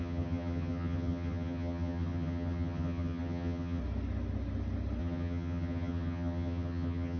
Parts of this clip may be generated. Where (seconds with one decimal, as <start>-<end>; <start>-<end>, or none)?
0.0-3.8; 5.0-7.2